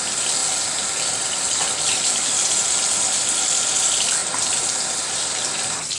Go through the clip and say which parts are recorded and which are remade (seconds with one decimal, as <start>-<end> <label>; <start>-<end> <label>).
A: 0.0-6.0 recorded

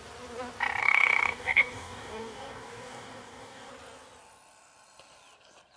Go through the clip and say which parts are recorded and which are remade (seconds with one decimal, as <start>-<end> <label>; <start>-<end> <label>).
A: 0.0-0.8 recorded; 0.8-3.7 remade; 3.7-5.8 recorded

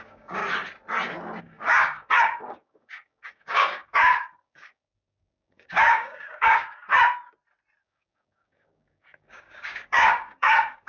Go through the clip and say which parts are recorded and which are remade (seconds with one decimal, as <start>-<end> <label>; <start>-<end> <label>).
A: 0.0-0.4 remade; 0.4-1.4 recorded; 1.4-6.9 remade; 6.9-7.8 recorded; 7.8-10.9 remade

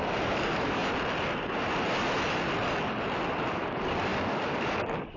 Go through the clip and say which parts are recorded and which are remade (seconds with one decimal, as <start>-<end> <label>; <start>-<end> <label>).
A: 0.0-0.8 remade; 0.8-3.5 recorded; 3.5-5.2 remade